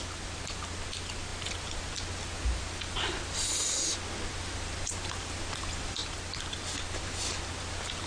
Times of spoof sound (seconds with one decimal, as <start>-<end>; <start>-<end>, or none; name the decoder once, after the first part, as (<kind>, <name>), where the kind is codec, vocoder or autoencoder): none